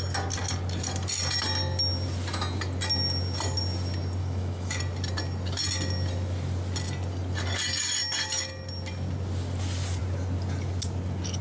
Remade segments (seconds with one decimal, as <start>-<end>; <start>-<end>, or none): 4.2-4.8